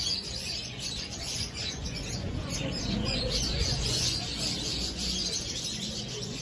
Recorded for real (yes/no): no